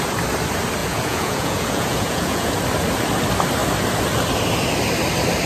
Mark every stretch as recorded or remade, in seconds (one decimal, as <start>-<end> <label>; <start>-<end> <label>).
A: 0.0-0.8 recorded; 0.8-2.5 remade; 2.5-5.5 recorded

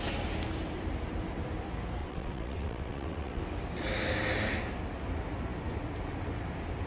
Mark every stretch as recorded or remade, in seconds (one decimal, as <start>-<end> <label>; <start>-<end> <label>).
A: 0.0-2.0 recorded; 2.0-3.4 remade; 3.4-6.9 recorded

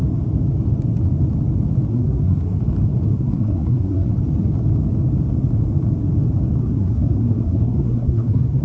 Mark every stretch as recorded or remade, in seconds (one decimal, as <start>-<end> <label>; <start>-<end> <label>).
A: 0.0-1.9 recorded; 1.9-2.6 remade; 2.6-3.1 recorded; 3.1-4.1 remade; 4.1-6.6 recorded; 6.6-8.6 remade

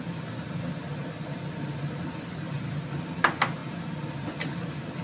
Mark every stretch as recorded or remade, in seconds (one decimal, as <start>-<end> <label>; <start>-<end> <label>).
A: 0.0-5.0 recorded

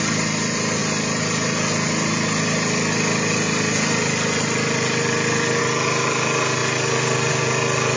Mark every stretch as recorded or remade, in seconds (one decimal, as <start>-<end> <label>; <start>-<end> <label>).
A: 0.0-8.0 recorded

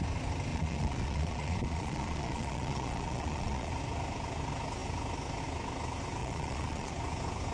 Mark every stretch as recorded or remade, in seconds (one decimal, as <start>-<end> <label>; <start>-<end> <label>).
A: 0.0-0.5 recorded; 0.5-3.7 remade; 3.7-6.2 recorded; 6.2-6.9 remade; 6.9-7.5 recorded